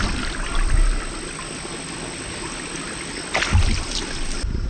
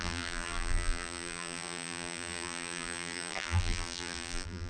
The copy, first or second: second